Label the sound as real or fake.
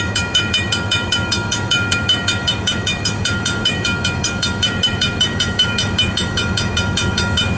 fake